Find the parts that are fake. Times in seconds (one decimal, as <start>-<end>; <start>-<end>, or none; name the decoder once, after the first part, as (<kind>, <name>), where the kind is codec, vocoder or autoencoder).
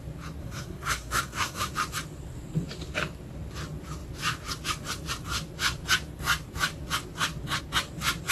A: 0.4-1.7 (codec, SNAC)